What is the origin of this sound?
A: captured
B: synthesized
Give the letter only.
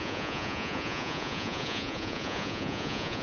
B